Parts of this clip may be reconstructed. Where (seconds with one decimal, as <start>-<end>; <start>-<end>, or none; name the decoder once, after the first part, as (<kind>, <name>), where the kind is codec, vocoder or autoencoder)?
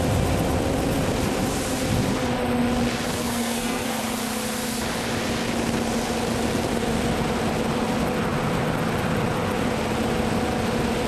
3.1-4.0 (codec, SNAC)